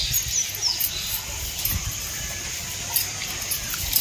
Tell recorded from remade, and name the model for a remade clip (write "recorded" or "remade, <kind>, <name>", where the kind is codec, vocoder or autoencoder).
recorded